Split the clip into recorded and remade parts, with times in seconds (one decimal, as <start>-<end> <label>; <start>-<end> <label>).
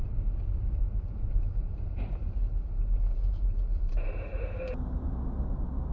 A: 0.0-1.6 recorded; 1.6-5.1 remade; 5.1-5.9 recorded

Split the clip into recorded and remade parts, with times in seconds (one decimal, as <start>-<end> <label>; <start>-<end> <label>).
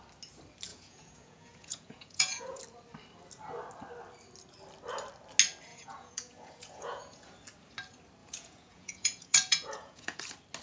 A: 0.0-0.7 recorded; 0.7-2.6 remade; 2.6-5.7 recorded; 5.7-7.3 remade; 7.3-8.2 recorded; 8.2-10.2 remade; 10.2-10.6 recorded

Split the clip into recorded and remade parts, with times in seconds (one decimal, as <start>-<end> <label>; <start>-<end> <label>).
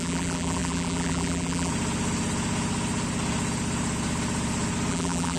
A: 0.0-1.7 remade; 1.7-4.9 recorded; 4.9-5.4 remade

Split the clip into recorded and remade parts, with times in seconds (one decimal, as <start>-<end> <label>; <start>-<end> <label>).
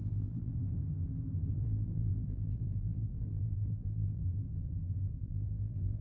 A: 0.0-0.5 remade; 0.5-1.5 recorded; 1.5-4.2 remade; 4.2-5.2 recorded; 5.2-6.0 remade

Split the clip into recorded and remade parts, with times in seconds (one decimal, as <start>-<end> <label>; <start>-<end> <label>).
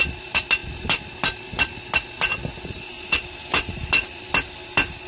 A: 0.0-5.1 recorded